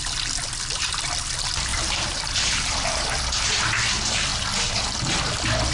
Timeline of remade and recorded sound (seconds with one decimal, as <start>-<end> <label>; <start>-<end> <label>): 0.0-1.7 recorded; 1.7-3.2 remade; 3.2-5.7 recorded